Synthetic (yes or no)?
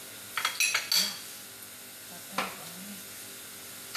no